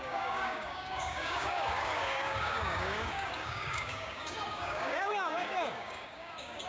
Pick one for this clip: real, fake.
fake